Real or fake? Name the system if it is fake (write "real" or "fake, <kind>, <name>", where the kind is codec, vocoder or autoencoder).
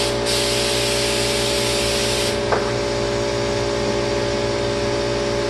real